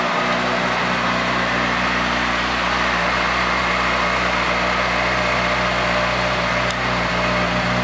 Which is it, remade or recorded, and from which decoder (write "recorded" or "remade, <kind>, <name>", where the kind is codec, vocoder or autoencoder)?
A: recorded